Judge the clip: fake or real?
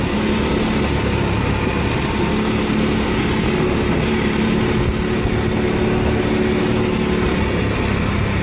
real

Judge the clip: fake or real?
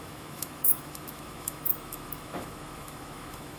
fake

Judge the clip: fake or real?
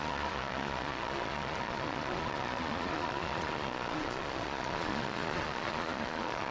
fake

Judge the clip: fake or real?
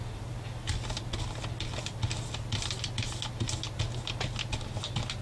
real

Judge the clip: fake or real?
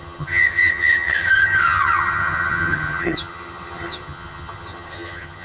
fake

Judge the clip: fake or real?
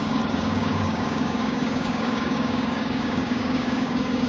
fake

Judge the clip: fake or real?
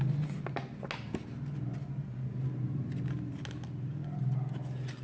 real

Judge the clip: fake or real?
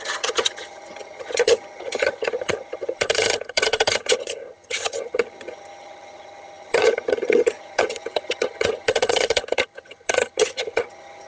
fake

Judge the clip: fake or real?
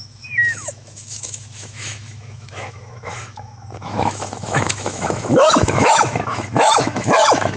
fake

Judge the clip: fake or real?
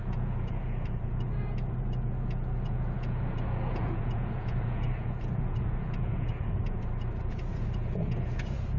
fake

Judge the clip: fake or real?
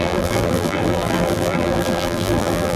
fake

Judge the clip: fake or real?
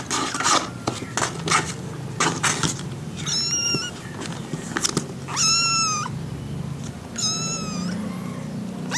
real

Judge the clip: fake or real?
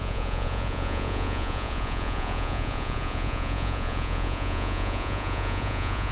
fake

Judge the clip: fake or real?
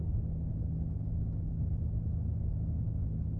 real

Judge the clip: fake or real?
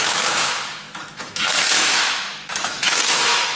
fake